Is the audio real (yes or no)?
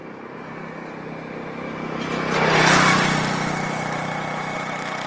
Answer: yes